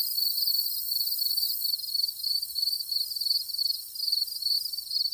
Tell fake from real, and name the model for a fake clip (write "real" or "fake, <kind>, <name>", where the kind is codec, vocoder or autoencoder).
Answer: fake, vocoder, BigVGAN v2